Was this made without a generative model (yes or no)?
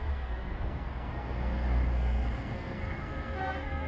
no